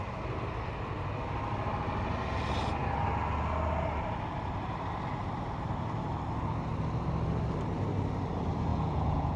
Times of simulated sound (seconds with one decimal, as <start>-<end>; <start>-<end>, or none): 8.7-9.4